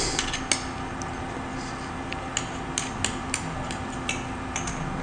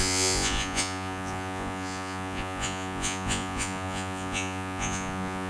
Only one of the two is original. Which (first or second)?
first